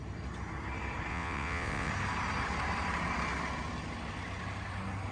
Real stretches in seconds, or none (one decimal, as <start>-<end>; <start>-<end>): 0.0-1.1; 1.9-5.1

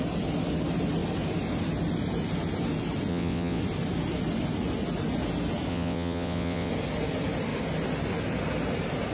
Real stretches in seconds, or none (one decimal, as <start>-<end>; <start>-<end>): 0.0-3.1; 3.6-5.7; 6.7-9.1

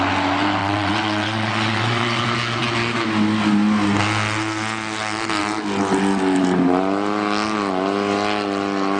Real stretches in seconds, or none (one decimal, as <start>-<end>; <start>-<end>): 0.0-0.6; 2.2-9.0